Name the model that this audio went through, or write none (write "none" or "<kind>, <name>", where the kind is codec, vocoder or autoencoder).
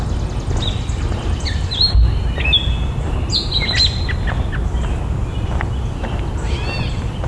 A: none